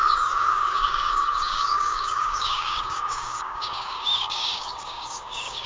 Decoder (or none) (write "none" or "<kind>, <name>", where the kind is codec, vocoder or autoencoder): codec, DAC